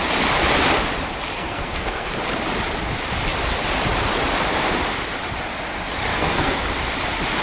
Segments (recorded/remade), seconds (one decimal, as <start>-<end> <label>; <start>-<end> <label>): 0.0-1.3 recorded; 1.3-2.1 remade; 2.1-6.1 recorded; 6.1-6.6 remade; 6.6-7.4 recorded